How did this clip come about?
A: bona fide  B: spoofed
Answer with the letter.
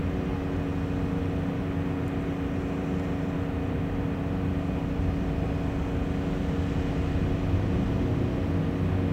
A